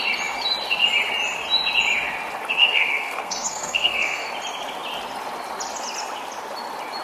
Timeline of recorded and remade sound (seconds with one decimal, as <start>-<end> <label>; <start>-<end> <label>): 0.0-2.6 recorded; 2.6-4.3 remade; 4.3-7.0 recorded